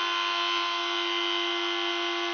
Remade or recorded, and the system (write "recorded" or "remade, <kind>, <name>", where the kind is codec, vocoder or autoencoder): recorded